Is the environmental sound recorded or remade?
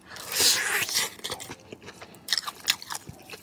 recorded